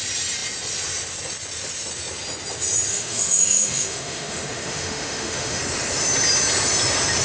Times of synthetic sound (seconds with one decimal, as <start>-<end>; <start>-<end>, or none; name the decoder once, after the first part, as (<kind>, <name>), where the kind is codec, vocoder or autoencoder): 2.9-5.6 (autoencoder, DAC-VAE)